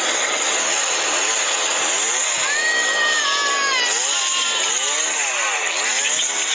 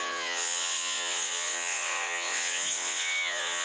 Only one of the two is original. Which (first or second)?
first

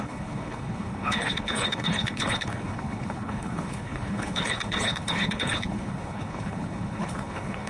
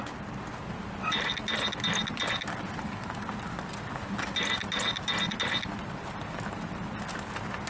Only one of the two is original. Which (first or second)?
second